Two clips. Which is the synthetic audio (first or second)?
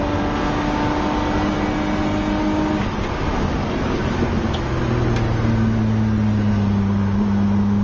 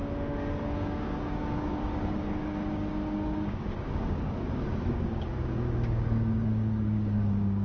second